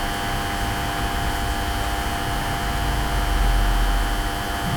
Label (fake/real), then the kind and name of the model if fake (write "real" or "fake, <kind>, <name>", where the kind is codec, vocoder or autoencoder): real